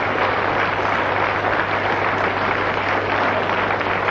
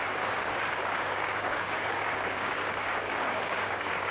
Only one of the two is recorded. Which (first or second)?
first